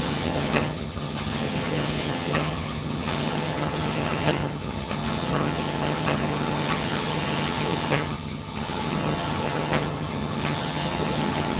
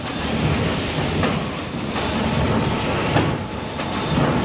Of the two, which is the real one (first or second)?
second